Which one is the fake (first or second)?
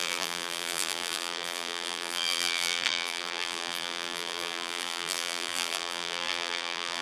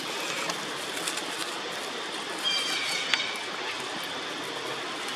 first